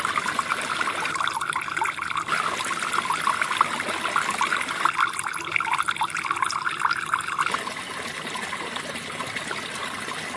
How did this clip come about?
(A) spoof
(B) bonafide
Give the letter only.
B